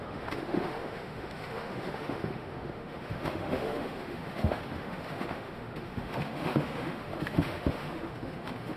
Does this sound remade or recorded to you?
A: remade